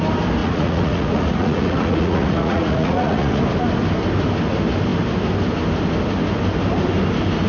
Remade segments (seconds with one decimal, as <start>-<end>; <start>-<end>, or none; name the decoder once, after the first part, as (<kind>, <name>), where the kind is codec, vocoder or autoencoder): 0.4-3.4 (vocoder, Vocos)